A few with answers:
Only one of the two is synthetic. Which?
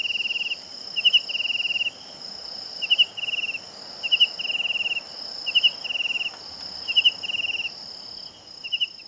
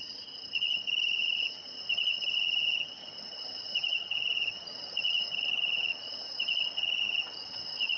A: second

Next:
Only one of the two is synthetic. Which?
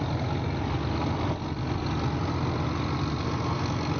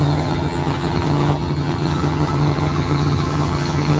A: second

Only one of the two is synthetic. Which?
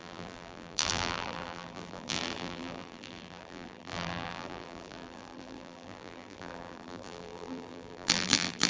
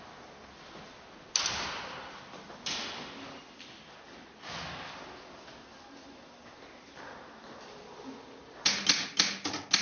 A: first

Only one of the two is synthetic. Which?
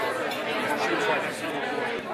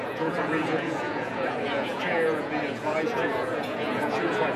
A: second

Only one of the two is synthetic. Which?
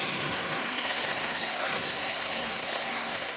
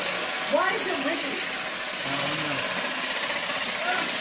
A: first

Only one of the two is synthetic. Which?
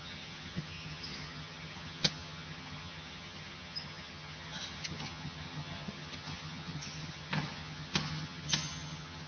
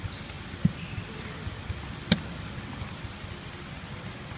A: first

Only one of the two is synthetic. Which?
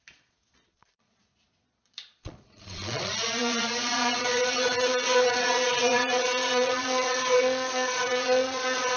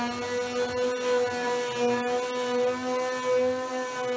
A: first